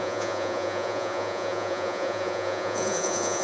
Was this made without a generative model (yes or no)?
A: no